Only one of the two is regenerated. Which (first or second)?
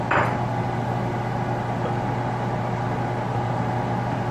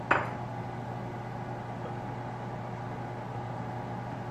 first